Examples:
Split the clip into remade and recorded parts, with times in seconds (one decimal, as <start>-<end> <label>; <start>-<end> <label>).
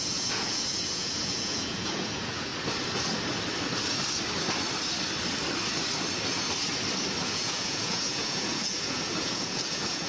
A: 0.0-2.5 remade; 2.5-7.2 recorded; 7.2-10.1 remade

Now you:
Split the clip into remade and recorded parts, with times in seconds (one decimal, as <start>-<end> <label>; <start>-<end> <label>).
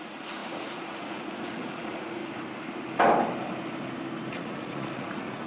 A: 0.0-2.2 remade; 2.2-4.3 recorded; 4.3-5.5 remade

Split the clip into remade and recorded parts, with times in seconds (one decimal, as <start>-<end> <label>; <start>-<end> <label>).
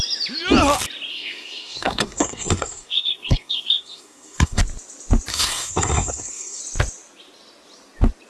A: 0.0-1.1 recorded; 1.1-4.6 remade; 4.6-5.3 recorded; 5.3-6.6 remade; 6.6-8.3 recorded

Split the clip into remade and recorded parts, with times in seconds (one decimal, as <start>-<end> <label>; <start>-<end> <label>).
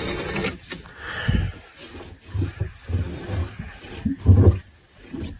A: 0.0-5.4 recorded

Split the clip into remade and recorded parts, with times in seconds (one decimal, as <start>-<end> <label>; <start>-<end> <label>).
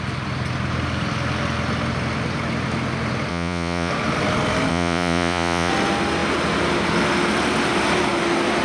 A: 0.0-3.3 recorded; 3.3-3.9 remade; 3.9-4.7 recorded; 4.7-5.7 remade; 5.7-8.6 recorded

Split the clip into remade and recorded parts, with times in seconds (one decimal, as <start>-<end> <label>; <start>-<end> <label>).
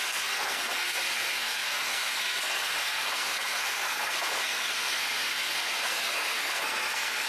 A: 0.0-7.3 remade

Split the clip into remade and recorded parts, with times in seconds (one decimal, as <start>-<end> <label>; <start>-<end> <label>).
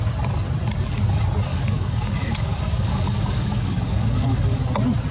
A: 0.0-1.5 recorded; 1.5-4.6 remade; 4.6-5.1 recorded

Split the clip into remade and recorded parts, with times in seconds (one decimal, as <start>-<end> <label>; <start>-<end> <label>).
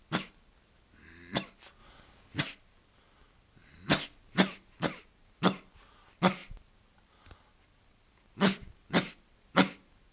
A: 0.0-10.1 recorded